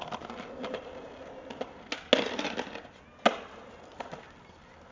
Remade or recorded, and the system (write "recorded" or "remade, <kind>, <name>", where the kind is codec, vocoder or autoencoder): recorded